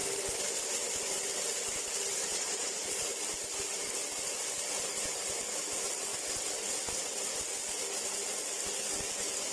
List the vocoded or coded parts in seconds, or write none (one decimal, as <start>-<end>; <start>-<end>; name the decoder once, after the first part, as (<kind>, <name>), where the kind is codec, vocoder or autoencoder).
2.3-3.0 (vocoder, Vocos)